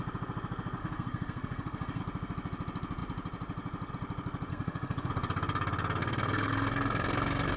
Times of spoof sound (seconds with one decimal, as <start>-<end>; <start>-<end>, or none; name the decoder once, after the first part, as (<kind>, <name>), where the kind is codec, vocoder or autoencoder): 0.8-2.0 (codec, SNAC); 4.5-5.1; 6.0-7.6